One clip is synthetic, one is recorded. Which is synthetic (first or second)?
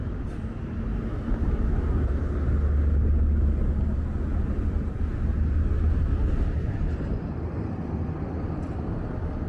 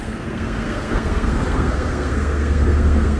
second